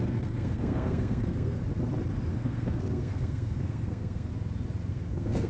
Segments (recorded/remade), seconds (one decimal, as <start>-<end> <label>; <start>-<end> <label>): 0.0-1.6 remade; 1.6-2.3 recorded; 2.3-4.3 remade; 4.3-4.9 recorded; 4.9-5.5 remade

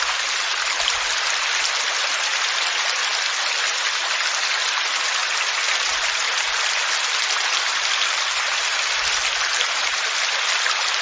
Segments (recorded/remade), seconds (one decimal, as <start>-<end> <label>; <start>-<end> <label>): 0.0-11.0 recorded

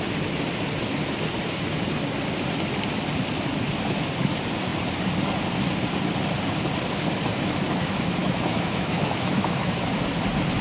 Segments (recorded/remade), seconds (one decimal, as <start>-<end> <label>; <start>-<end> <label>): 0.0-8.2 recorded; 8.2-9.8 remade; 9.8-10.6 recorded

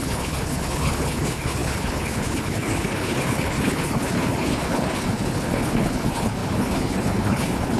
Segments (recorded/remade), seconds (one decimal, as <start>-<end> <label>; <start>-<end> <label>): 0.0-7.8 remade

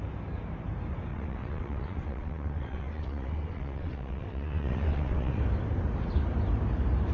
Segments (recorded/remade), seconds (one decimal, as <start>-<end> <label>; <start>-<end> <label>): 0.0-1.1 recorded; 1.1-5.4 remade; 5.4-7.1 recorded